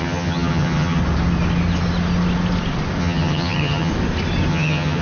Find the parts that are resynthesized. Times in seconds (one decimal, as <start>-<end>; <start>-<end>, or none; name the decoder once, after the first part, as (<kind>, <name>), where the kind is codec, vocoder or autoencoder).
0.0-1.0 (vocoder, HiFi-GAN); 3.0-3.9; 4.5-5.0